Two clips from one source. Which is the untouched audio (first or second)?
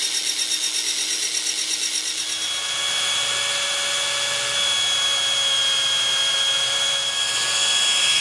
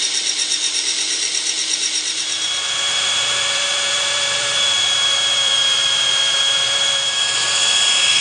first